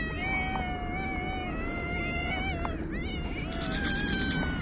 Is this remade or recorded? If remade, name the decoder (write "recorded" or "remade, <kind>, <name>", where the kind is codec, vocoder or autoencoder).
recorded